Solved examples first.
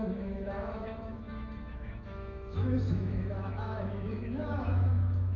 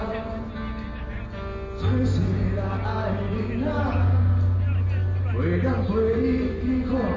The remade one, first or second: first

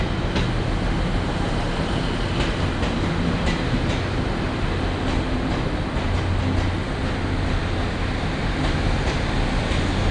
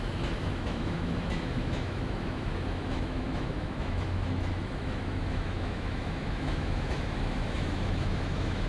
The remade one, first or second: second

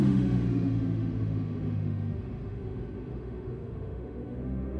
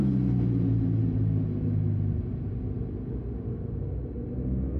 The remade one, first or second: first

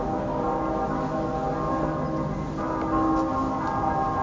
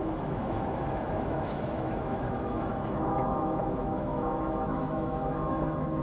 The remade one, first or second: second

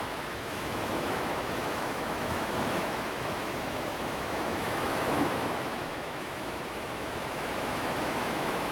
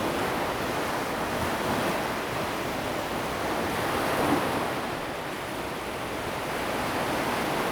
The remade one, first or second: first